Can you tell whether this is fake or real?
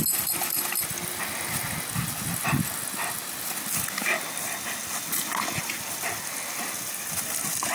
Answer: real